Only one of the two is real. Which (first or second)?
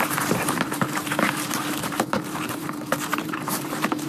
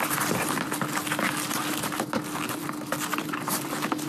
second